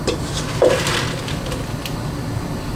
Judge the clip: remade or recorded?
recorded